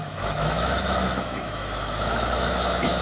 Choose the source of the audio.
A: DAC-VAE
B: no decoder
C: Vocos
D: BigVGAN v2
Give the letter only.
A